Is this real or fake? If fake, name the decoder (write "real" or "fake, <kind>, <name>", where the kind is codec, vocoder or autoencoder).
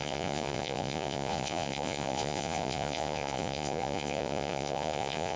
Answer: fake, vocoder, Vocos